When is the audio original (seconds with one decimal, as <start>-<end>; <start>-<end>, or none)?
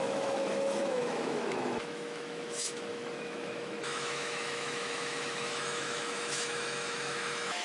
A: none